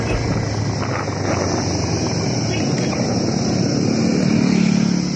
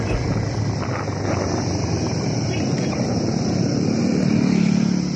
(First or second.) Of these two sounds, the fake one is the second